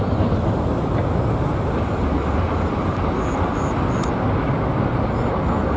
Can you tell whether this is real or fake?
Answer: real